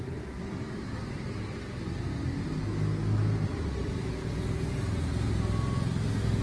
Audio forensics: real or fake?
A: real